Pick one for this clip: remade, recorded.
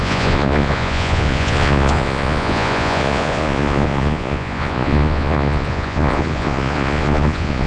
remade